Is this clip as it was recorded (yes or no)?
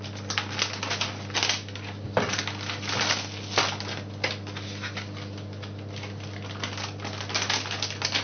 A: yes